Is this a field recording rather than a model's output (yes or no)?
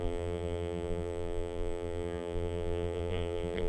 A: no